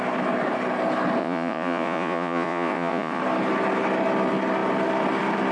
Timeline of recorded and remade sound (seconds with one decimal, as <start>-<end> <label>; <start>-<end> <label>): 0.0-1.2 recorded; 1.2-3.2 remade; 3.2-5.5 recorded